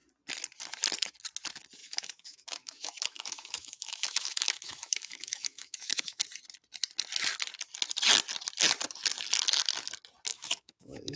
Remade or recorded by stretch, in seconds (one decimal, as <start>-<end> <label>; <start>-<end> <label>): 0.0-1.8 recorded; 1.8-6.2 remade; 6.2-10.3 recorded; 10.3-11.2 remade